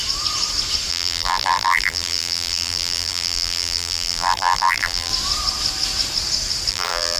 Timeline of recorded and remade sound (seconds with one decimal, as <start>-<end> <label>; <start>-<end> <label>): 0.0-0.9 recorded; 0.9-5.1 remade; 5.1-6.7 recorded; 6.7-7.2 remade